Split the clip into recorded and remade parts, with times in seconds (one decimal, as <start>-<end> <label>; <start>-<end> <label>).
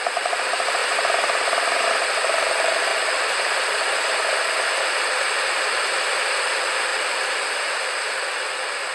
0.0-0.8 remade; 0.8-2.1 recorded; 2.1-8.9 remade